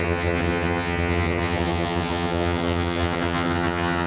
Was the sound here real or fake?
fake